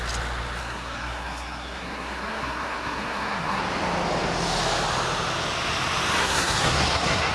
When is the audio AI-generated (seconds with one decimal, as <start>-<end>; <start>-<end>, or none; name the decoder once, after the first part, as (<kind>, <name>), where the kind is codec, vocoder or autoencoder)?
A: 0.6-3.6 (codec, SNAC); 6.2-7.3